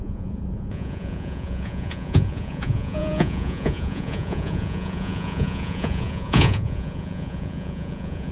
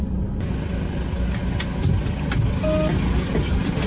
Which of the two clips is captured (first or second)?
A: second